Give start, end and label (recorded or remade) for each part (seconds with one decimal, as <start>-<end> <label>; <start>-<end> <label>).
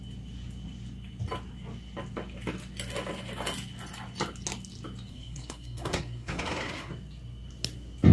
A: 0.0-5.1 recorded; 5.1-6.9 remade; 6.9-8.1 recorded